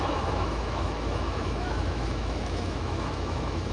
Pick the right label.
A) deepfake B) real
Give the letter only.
A